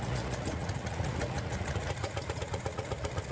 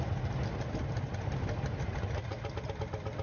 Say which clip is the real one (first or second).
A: second